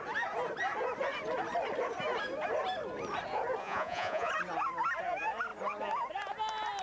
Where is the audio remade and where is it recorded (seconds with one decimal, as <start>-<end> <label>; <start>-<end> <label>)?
0.0-3.6 recorded; 3.6-4.3 remade; 4.3-6.8 recorded